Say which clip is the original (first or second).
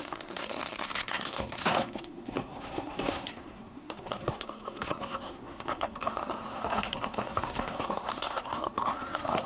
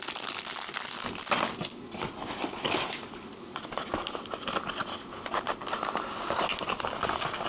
second